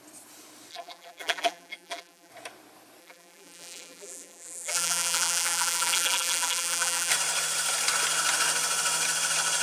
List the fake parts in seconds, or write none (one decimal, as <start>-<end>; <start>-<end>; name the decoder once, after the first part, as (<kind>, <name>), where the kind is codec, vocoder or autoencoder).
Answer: 0.7-2.3 (vocoder, BigVGAN v2); 3.0-7.1